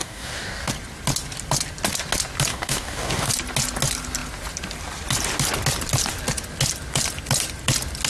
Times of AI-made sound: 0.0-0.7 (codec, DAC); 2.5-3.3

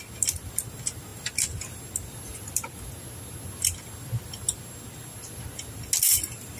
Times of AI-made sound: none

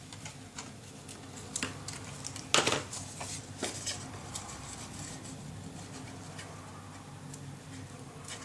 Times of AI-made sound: none

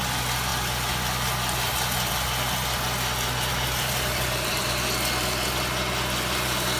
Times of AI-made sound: 3.5-4.7 (vocoder, BigVGAN v2)

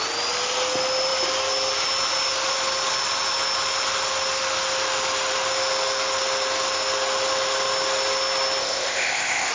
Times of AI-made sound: 8.6-9.5 (codec, ZipCodec)

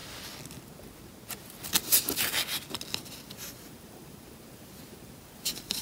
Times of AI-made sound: 3.5-5.8 (vocoder, BigVGAN v2)